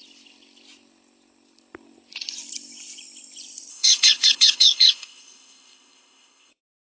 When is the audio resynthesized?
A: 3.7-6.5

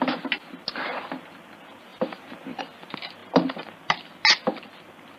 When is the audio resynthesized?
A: 1.9-2.6

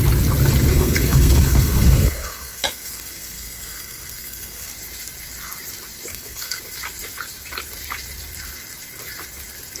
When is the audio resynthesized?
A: 0.7-4.7; 6.1-6.6

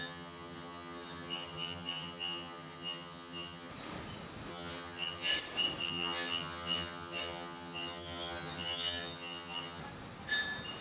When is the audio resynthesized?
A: 0.0-3.7; 4.5-5.3; 5.8-9.8

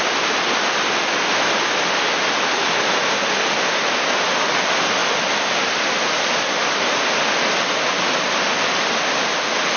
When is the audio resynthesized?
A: none